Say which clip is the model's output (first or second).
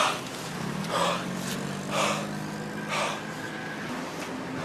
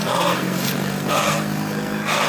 second